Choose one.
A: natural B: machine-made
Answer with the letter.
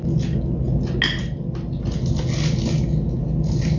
A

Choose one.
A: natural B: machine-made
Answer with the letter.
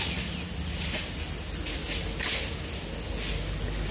A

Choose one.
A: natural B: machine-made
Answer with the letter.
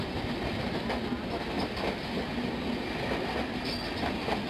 A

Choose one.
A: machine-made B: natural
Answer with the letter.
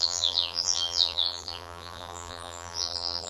A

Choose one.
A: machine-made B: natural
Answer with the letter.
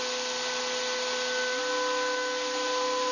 B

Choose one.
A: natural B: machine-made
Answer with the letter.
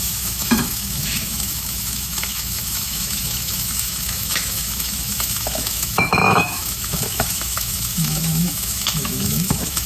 B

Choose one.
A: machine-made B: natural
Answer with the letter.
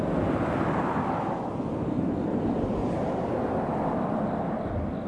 B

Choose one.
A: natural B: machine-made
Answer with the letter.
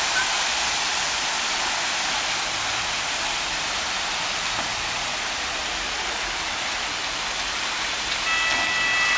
A